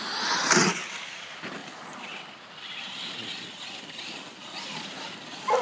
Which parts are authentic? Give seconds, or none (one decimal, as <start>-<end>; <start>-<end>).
0.0-5.6